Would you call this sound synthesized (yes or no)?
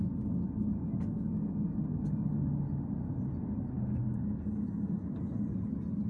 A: no